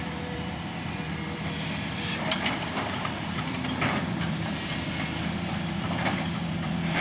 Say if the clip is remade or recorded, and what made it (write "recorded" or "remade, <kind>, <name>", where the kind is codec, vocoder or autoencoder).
remade, vocoder, BigVGAN v2